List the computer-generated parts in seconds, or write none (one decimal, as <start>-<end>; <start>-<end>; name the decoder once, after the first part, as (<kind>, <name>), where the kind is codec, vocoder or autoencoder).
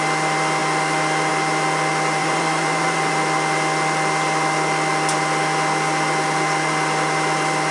2.2-3.1 (vocoder, Vocos)